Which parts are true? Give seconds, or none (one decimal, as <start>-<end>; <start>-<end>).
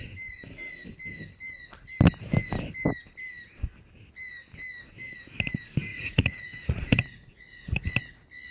0.0-5.9; 7.9-8.5